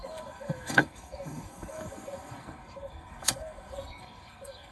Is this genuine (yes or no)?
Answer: no